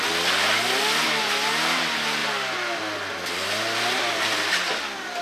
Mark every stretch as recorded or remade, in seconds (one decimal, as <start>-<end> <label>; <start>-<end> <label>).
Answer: 0.0-5.2 recorded